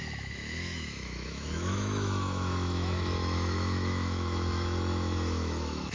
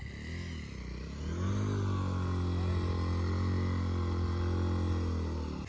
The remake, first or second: first